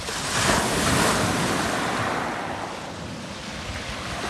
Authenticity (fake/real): real